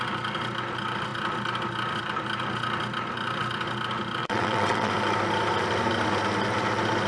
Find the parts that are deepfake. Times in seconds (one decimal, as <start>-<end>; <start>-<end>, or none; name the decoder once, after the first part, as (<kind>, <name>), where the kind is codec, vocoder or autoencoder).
4.2-4.9 (vocoder, WaveNeXt)